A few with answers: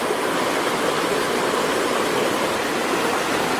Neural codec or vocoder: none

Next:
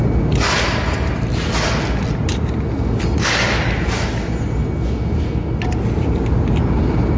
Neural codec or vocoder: none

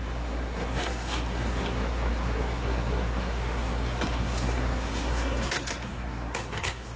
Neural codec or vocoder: codec, SNAC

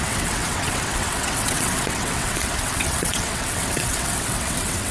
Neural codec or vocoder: vocoder, WaveNeXt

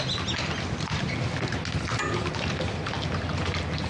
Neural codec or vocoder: none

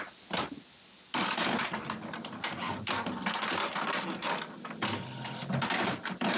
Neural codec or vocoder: none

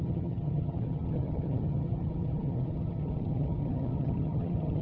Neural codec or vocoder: vocoder, HiFi-GAN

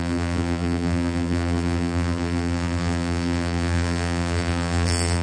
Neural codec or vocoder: vocoder, BigVGAN v2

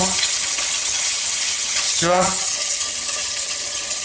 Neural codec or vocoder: vocoder, HiFi-GAN